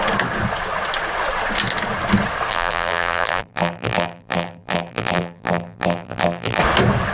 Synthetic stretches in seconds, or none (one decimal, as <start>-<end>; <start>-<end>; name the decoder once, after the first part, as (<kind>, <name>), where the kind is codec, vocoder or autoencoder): 2.5-6.6 (vocoder, BigVGAN v2)